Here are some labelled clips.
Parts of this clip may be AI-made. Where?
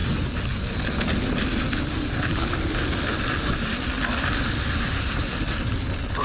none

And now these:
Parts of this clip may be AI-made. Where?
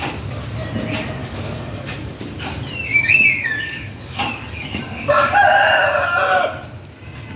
1.2-2.2 (codec, DAC); 2.9-5.3